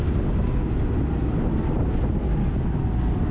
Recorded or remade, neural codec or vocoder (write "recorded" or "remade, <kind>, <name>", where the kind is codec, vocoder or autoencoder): recorded